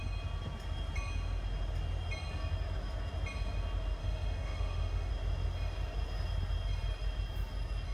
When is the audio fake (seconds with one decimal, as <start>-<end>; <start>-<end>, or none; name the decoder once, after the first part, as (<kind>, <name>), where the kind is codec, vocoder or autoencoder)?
4.0-5.1 (autoencoder, DAC-VAE)